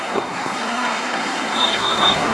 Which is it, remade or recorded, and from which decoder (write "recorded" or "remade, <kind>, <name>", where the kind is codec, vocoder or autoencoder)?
remade, codec, SNAC